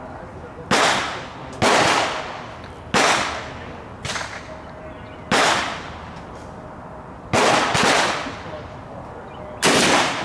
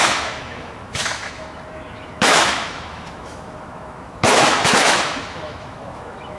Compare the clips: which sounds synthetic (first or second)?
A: second